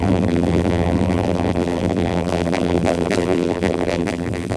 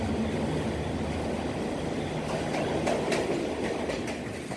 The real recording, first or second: second